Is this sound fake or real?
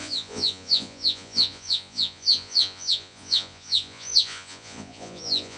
fake